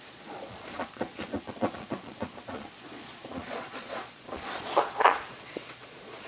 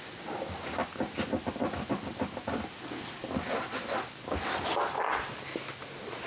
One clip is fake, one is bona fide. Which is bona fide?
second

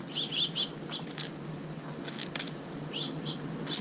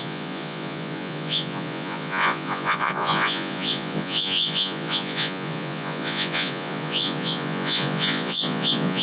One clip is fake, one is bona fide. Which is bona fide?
first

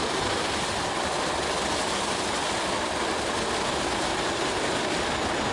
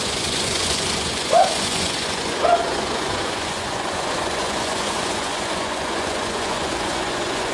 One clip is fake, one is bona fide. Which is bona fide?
first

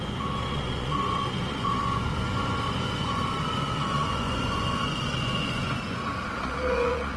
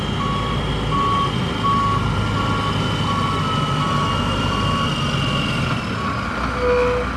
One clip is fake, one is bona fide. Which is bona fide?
second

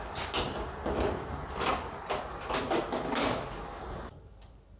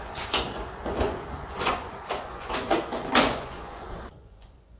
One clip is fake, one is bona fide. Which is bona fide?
first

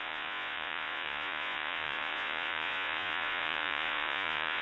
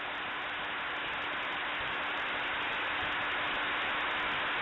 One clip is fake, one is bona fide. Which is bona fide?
second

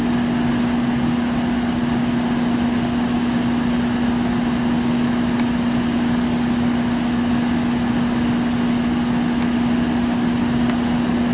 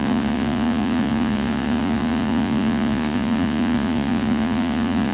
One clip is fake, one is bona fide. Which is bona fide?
first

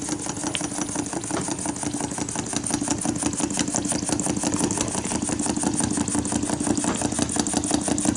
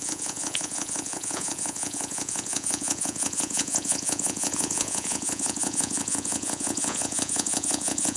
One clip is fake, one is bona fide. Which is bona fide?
first